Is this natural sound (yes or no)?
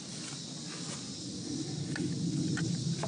yes